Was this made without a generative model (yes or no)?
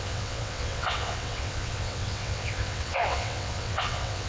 no